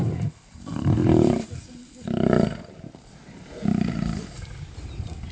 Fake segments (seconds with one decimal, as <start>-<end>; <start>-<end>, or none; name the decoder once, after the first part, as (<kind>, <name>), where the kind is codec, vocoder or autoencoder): none